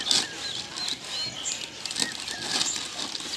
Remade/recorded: recorded